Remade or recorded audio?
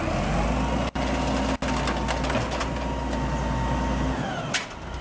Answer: recorded